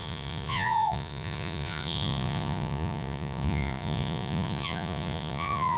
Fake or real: fake